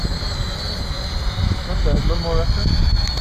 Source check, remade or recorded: recorded